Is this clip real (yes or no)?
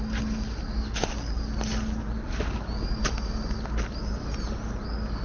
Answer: yes